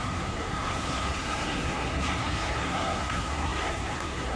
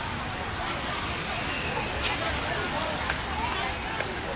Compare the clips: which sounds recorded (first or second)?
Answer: second